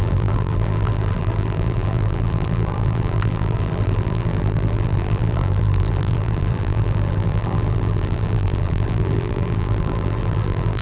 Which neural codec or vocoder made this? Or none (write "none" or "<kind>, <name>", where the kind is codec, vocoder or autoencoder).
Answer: vocoder, BigVGAN v2